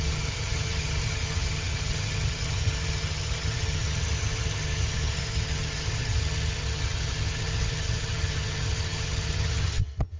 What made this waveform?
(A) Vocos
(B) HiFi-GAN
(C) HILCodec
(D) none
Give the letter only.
B